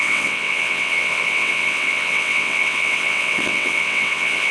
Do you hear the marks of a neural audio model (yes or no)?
yes